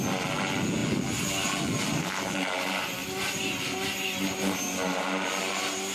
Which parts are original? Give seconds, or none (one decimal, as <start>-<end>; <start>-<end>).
0.0-2.0; 2.5-5.9